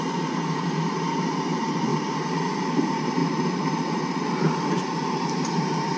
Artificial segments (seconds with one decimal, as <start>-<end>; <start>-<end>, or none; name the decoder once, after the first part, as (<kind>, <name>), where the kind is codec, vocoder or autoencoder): 0.0-3.2 (vocoder, BigVGAN v2); 4.8-6.0